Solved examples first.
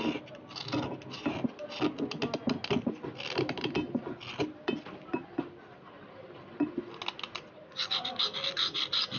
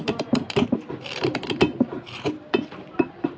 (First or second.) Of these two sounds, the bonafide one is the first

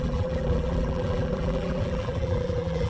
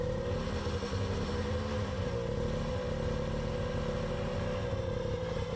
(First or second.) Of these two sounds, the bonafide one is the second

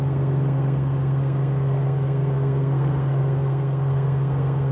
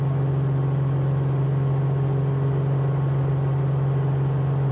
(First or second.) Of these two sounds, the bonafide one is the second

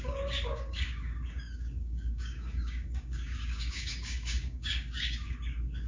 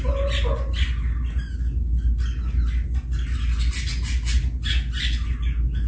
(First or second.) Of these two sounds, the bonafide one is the second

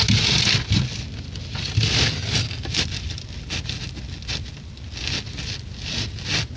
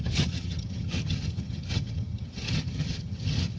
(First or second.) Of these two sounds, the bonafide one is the first